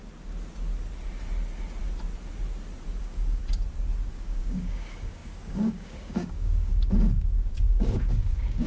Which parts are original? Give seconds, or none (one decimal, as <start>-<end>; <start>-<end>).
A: 0.0-3.0; 3.4-4.1